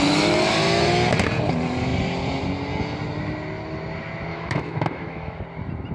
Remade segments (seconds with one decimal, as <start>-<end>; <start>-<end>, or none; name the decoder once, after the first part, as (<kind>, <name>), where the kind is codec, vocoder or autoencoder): 4.3-5.4 (autoencoder, DAC-VAE)